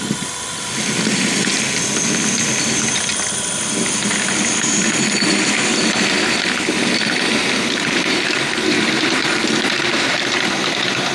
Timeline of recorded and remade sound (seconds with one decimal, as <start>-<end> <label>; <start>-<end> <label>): 0.0-1.5 remade; 1.5-2.5 recorded; 2.5-11.1 remade